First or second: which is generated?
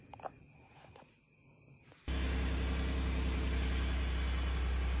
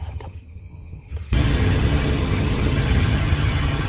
second